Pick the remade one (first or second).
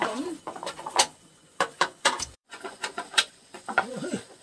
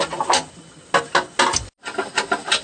first